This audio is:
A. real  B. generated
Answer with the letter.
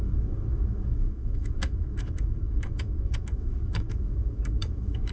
B